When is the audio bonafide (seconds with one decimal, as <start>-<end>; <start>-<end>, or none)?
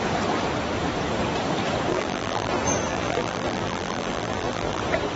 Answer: 0.0-1.9; 2.5-2.9; 4.8-5.2